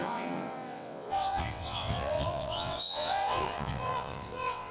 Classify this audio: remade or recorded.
remade